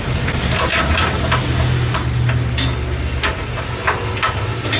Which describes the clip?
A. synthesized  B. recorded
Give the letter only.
B